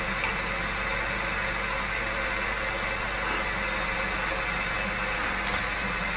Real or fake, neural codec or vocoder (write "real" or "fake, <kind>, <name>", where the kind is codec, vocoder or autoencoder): real